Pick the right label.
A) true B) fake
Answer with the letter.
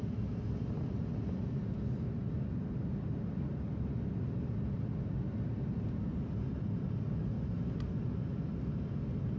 A